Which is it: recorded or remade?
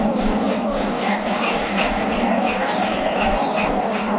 remade